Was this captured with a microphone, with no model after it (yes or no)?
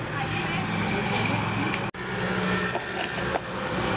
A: yes